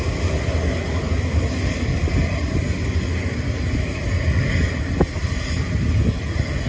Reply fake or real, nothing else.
real